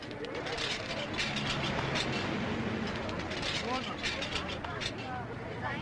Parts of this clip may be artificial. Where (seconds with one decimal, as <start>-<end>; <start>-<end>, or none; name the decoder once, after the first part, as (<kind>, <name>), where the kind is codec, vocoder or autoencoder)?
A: none